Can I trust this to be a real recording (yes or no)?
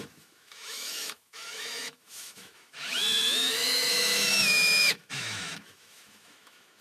no